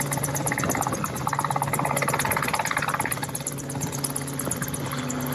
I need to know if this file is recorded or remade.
recorded